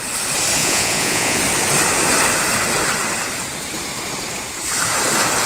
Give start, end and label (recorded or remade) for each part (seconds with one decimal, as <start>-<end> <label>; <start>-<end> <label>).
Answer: 0.0-0.6 recorded; 0.6-1.4 remade; 1.4-5.5 recorded